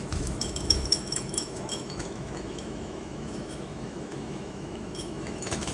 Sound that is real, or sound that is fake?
fake